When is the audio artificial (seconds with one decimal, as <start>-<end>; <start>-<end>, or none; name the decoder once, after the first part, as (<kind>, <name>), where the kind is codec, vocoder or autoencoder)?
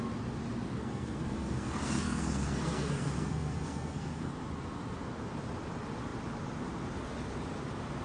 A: 0.8-4.3 (codec, SNAC)